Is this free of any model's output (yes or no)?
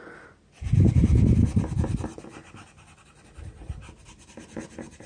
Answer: yes